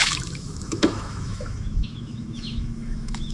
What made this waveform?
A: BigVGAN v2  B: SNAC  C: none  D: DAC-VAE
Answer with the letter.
D